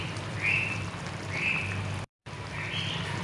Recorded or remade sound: recorded